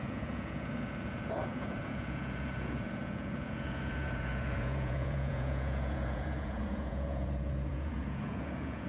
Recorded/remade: remade